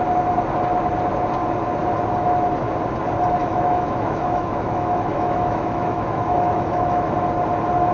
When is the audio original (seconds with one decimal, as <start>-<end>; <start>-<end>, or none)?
0.0-3.4; 7.1-7.9